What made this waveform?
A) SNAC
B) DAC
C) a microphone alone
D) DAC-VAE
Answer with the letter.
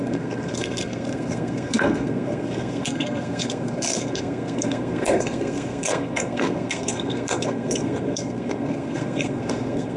A